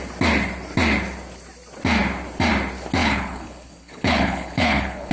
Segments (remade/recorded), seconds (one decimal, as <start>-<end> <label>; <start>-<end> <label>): 0.0-3.0 recorded; 3.0-5.1 remade